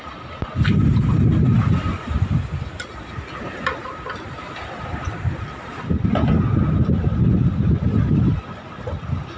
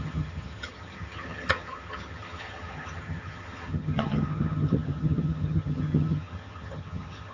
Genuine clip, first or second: first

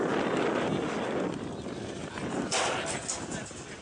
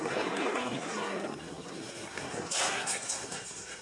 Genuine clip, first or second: first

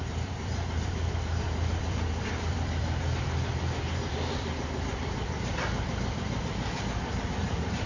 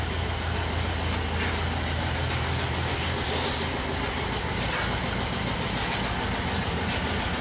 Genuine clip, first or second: second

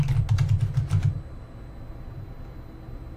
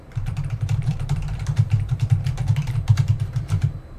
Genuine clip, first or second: first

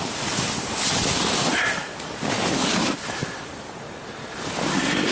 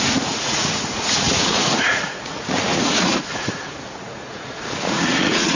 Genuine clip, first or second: first